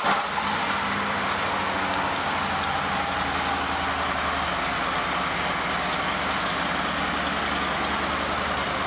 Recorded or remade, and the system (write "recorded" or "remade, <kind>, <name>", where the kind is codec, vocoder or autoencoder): recorded